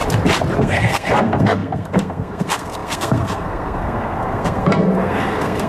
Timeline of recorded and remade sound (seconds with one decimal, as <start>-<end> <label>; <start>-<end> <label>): 0.0-0.6 recorded; 0.6-5.7 remade